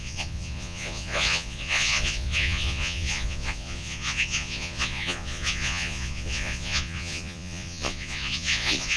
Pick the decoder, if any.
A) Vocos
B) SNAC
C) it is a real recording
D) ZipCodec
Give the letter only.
A